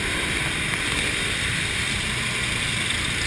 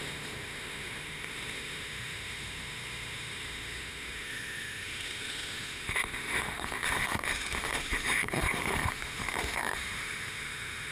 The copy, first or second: second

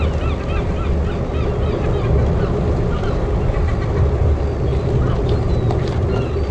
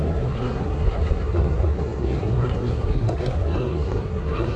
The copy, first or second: second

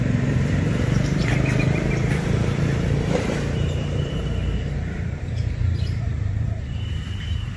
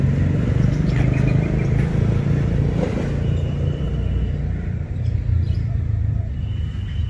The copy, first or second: first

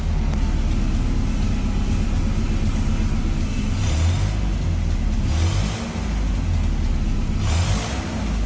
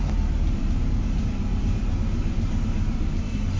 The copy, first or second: second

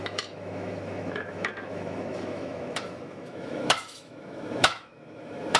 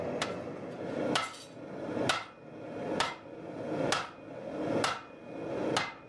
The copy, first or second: first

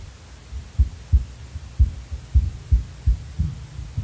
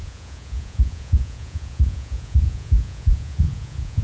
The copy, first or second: second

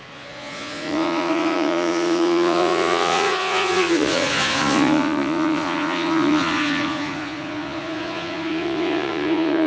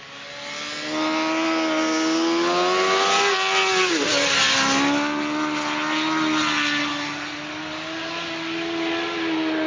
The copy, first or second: first